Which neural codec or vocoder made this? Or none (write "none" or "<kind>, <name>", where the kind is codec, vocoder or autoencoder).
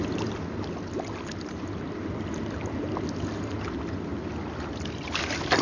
none